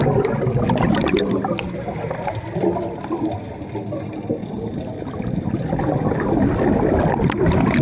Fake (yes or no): no